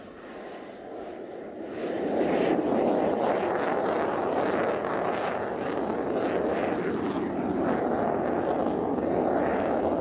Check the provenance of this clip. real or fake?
real